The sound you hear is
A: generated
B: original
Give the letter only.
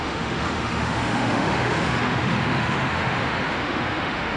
A